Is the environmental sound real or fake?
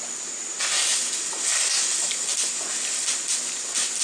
real